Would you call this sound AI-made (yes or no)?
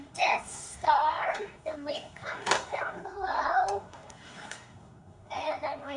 yes